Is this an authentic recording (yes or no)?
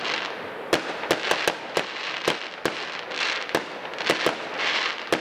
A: yes